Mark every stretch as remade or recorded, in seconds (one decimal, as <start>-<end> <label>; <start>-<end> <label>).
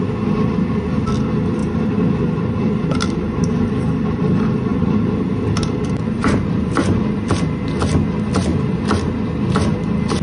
0.0-1.6 recorded; 1.6-3.5 remade; 3.5-4.7 recorded; 4.7-7.3 remade; 7.3-8.5 recorded; 8.5-9.1 remade; 9.1-10.2 recorded